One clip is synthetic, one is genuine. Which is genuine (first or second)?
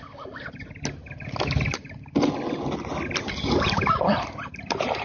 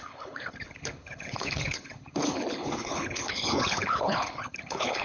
first